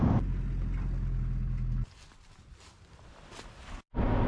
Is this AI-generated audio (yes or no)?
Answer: no